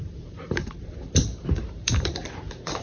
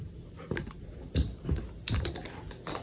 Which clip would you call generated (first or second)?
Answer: first